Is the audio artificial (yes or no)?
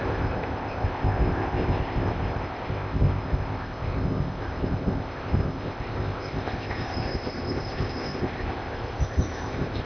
yes